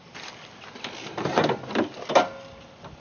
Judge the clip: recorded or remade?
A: recorded